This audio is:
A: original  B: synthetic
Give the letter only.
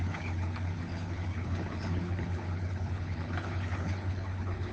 B